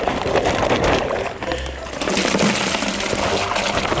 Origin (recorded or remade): recorded